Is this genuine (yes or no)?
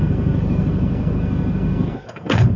no